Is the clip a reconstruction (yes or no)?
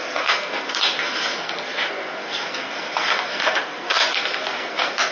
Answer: yes